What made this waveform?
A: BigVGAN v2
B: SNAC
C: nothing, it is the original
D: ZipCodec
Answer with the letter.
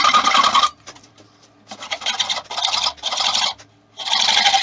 A